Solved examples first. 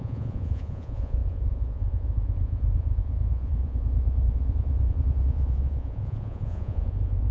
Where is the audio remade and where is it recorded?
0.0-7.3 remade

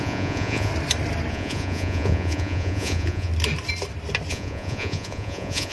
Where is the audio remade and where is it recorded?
0.0-0.7 remade; 0.7-1.3 recorded; 1.3-3.3 remade; 3.3-4.3 recorded; 4.3-5.7 remade

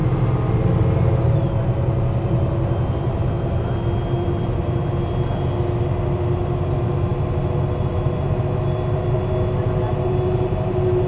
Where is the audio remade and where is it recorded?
0.0-11.1 recorded

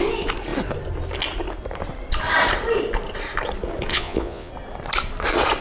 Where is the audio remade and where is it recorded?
0.0-3.9 recorded; 3.9-4.5 remade; 4.5-5.6 recorded

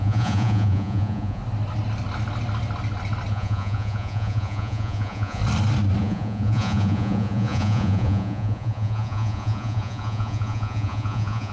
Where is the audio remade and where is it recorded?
0.0-1.4 remade; 1.4-3.3 recorded; 3.3-5.4 remade; 5.4-6.0 recorded; 6.0-11.5 remade

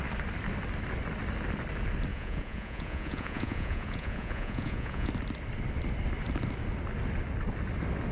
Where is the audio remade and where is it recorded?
0.0-2.1 recorded; 2.1-5.1 remade; 5.1-8.1 recorded